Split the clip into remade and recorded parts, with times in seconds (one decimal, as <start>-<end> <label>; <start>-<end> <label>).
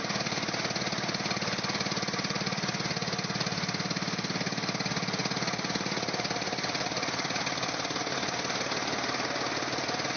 0.0-10.2 recorded